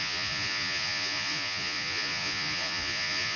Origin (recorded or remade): remade